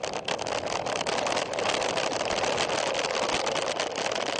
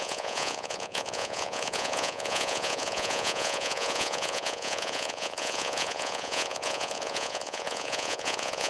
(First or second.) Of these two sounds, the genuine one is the first